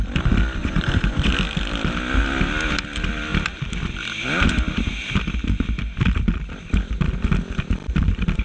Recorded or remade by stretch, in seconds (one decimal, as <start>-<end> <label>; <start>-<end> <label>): 0.0-0.6 recorded; 0.6-1.3 remade; 1.3-8.4 recorded

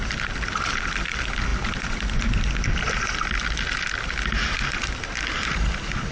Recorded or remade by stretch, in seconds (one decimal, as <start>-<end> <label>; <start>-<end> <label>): 0.0-6.1 recorded

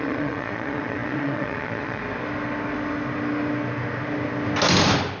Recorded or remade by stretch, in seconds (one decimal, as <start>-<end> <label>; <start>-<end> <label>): 0.0-2.0 remade; 2.0-5.2 recorded

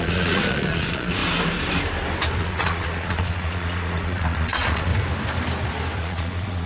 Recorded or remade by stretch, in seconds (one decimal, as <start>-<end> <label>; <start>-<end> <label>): 0.0-1.2 remade; 1.2-2.4 recorded; 2.4-4.9 remade; 4.9-6.0 recorded; 6.0-6.7 remade